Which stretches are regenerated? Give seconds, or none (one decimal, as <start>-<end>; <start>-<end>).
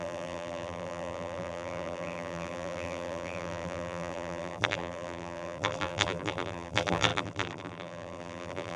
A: 0.0-8.8